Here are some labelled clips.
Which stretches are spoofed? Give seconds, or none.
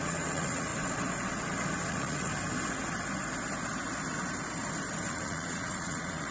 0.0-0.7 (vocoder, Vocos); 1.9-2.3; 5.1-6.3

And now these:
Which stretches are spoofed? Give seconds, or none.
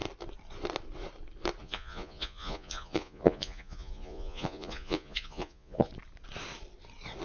1.6-5.9 (vocoder, Vocos)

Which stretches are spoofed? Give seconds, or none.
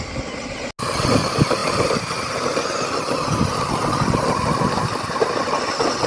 none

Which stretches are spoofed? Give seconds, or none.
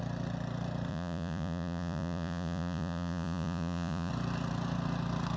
0.9-4.1 (vocoder, Vocos)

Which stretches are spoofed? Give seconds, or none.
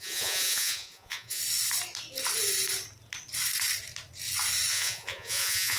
0.0-1.4 (vocoder, Vocos); 4.7-5.8